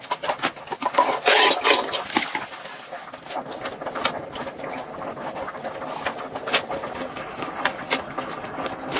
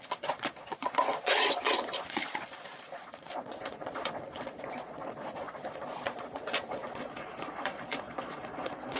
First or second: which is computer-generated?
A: second